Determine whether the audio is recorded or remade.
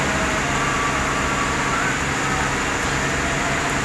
recorded